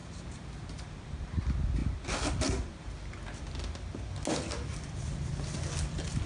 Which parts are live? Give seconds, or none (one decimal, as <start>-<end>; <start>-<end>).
0.0-6.3